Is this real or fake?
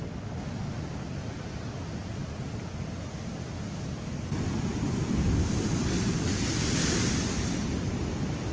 real